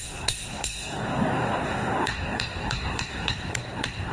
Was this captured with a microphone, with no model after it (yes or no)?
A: no